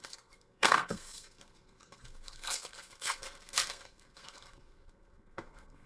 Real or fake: fake